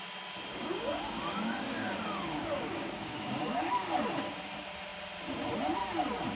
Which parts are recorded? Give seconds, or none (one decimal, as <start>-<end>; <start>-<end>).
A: 0.0-0.5; 4.3-6.3